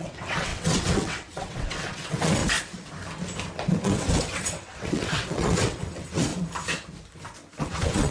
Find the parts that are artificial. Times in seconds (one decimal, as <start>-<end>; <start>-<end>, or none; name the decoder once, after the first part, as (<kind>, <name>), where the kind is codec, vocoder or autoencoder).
0.0-2.4 (vocoder, WaveNeXt); 3.7-6.3; 7.6-8.1